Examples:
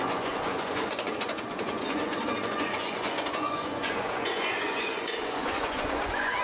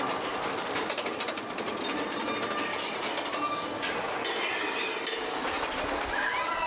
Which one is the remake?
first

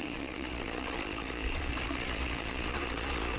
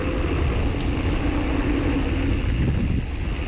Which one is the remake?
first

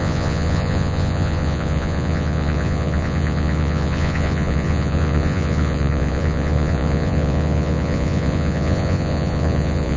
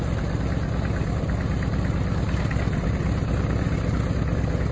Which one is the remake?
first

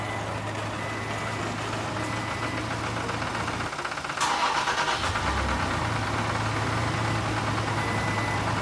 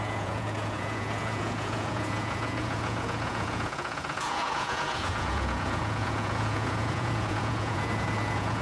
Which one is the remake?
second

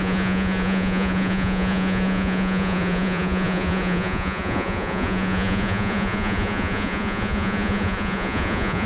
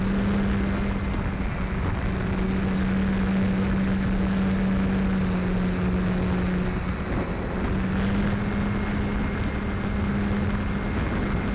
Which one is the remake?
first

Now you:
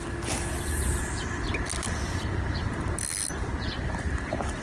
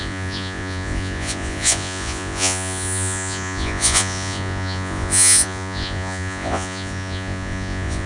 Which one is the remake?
second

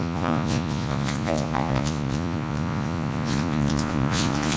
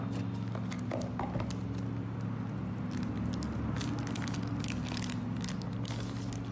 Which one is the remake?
first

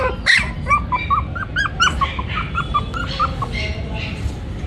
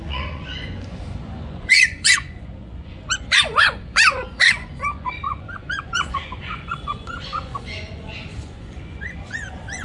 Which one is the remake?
second